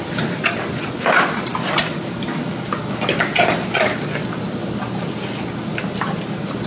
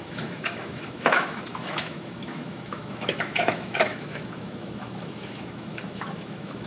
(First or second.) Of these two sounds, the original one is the first